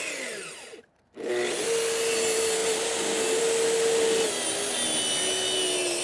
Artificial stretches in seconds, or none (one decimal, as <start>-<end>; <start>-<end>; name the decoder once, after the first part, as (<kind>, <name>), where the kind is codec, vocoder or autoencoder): none